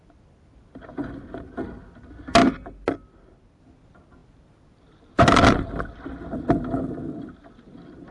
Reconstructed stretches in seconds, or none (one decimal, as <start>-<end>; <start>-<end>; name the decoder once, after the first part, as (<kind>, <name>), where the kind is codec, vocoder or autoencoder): none